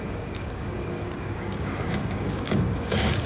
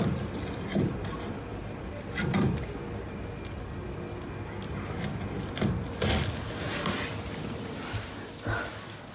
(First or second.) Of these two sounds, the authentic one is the second